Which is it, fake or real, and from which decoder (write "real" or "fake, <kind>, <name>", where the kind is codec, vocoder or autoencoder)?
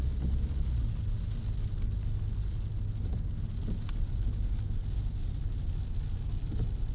real